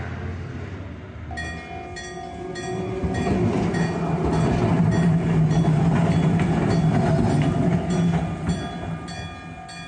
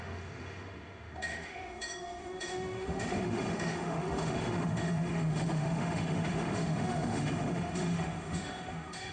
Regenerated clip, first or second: second